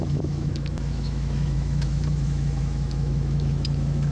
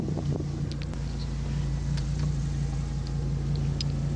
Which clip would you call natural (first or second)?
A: second